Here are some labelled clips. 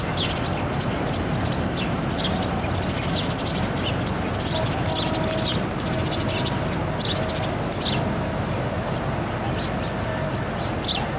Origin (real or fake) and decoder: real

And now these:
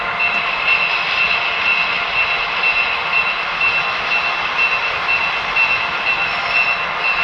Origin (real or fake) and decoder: real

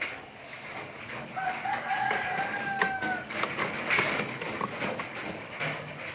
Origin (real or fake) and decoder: fake, codec, DAC